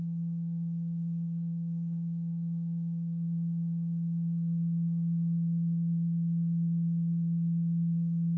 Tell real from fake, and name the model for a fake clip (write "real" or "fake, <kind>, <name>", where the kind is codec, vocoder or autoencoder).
fake, codec, SNAC